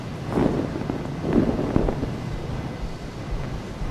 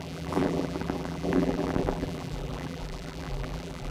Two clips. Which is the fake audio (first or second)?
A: second